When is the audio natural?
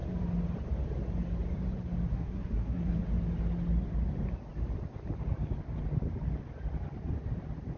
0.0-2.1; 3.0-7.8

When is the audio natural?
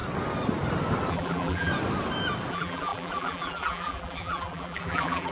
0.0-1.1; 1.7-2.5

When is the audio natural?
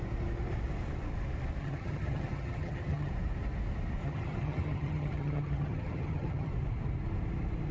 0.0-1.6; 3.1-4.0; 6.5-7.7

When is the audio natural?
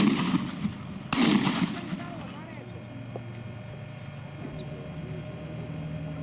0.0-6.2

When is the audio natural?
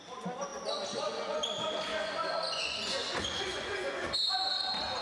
0.0-1.9; 4.3-5.0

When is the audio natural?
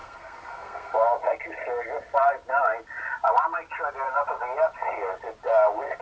0.9-6.0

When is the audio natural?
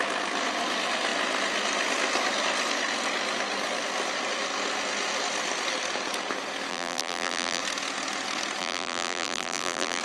0.0-6.7; 7.6-8.6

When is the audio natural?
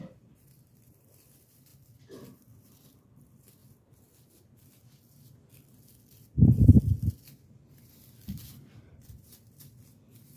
1.7-2.5; 3.6-7.8